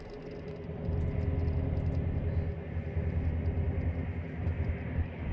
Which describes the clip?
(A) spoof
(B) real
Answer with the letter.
B